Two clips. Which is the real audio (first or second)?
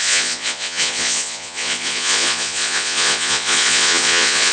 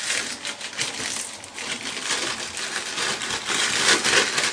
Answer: second